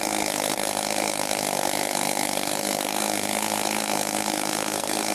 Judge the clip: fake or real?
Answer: fake